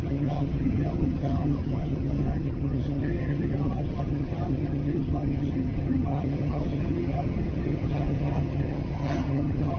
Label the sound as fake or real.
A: fake